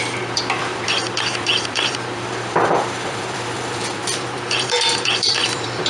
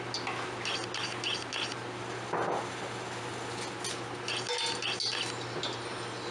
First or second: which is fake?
first